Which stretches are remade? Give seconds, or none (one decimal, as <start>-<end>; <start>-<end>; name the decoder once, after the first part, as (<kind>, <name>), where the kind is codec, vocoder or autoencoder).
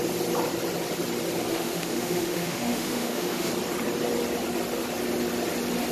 1.5-3.5 (autoencoder, DAC-VAE)